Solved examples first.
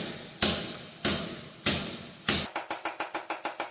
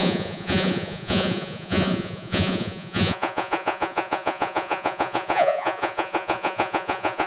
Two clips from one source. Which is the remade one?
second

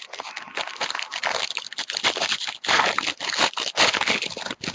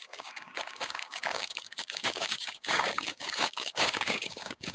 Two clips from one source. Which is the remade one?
second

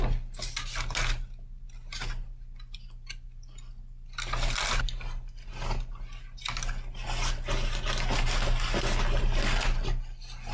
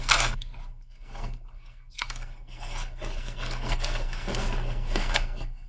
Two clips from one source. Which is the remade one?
second